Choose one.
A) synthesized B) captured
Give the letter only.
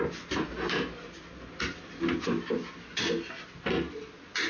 B